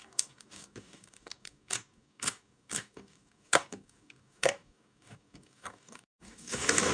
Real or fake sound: fake